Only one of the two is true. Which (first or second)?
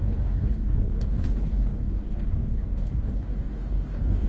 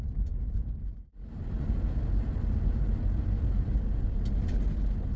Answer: second